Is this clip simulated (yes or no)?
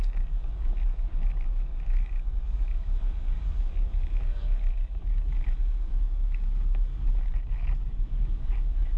yes